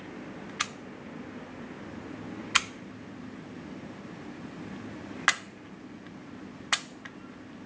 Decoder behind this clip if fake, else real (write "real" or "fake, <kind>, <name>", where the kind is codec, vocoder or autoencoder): real